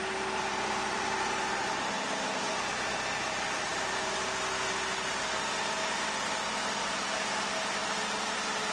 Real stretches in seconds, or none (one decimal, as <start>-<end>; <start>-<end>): 1.7-7.8